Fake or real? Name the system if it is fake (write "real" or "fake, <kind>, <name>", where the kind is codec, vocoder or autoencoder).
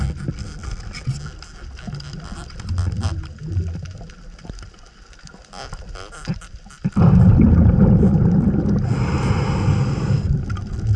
real